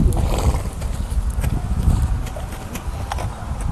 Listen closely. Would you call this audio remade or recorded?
recorded